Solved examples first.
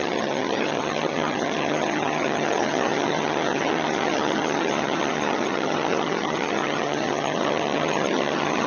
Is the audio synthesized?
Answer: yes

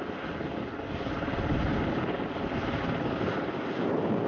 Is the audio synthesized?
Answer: no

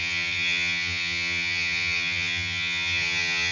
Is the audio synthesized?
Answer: yes